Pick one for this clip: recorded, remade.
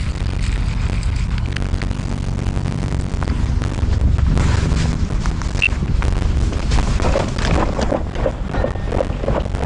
recorded